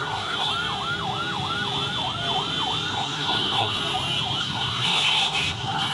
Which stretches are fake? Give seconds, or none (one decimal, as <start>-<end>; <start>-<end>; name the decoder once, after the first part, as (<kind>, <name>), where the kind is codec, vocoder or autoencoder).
0.0-0.5 (codec, SNAC); 2.9-3.8; 4.4-5.9